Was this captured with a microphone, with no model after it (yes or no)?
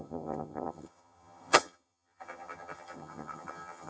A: no